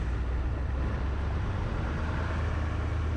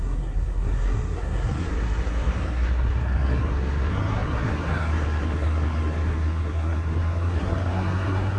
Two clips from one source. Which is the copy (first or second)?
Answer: second